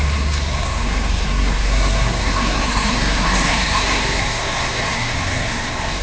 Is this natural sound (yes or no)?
no